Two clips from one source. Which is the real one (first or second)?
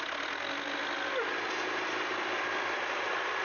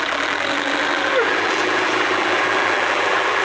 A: first